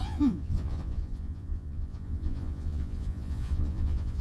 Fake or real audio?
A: fake